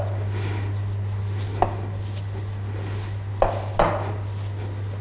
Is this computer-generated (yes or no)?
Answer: no